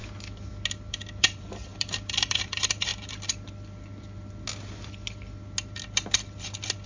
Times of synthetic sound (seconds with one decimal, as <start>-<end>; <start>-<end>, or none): 0.7-2.9